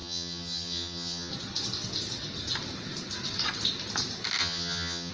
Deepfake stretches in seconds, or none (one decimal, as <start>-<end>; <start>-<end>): 0.0-1.3; 4.4-5.1